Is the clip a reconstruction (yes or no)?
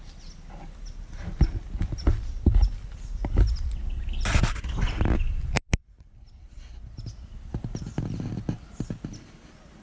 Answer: no